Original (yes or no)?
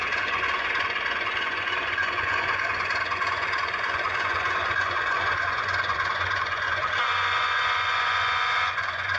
no